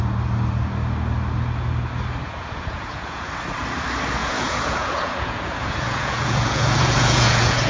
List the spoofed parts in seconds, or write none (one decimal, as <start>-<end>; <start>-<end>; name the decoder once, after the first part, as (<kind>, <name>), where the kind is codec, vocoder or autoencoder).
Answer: 2.2-3.3 (vocoder, Vocos); 4.2-7.7